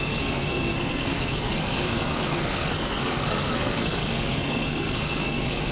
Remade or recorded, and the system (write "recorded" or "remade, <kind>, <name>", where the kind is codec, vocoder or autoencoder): remade, codec, SNAC